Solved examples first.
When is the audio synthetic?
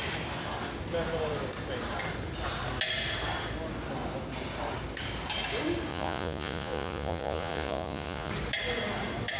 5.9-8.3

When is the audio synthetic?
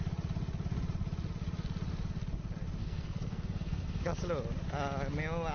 2.8-4.2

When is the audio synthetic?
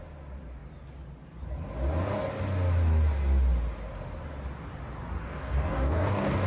5.2-6.5